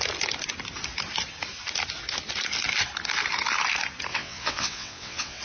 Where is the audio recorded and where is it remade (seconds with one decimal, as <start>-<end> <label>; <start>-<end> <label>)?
0.0-4.1 recorded; 4.1-5.4 remade